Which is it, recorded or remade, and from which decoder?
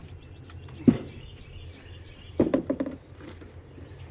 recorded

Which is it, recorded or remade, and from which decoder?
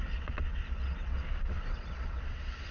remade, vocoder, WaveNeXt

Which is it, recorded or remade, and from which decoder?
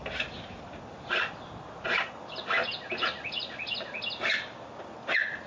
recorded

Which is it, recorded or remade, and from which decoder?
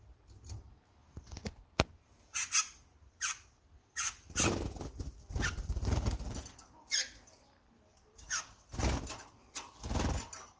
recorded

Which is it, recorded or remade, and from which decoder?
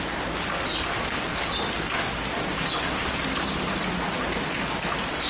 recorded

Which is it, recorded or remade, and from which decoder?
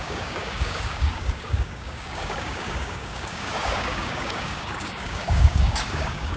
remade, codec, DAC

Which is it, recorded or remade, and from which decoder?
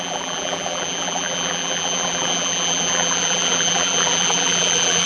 remade, vocoder, BigVGAN v2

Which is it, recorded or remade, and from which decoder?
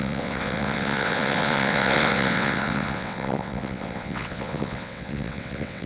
remade, vocoder, WaveNeXt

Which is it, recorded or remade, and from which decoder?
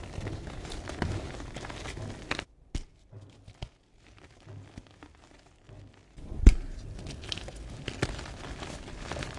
recorded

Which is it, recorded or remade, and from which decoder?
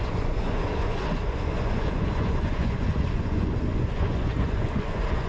remade, vocoder, Vocos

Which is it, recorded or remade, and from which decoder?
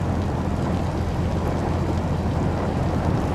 recorded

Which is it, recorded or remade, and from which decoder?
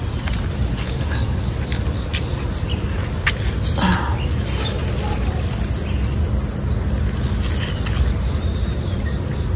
recorded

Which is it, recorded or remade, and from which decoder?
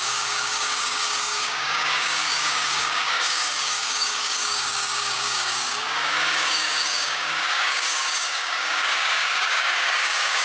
remade, codec, DAC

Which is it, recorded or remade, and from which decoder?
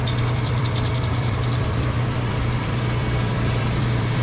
remade, vocoder, BigVGAN v2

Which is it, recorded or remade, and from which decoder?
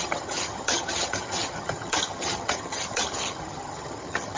remade, vocoder, HiFi-GAN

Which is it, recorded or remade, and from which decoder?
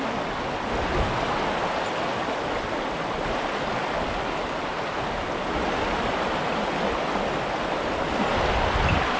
recorded